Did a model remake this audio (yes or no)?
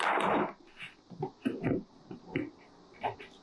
no